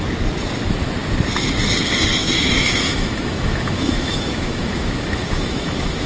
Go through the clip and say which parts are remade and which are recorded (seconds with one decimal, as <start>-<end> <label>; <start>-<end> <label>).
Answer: 0.0-2.2 recorded; 2.2-6.1 remade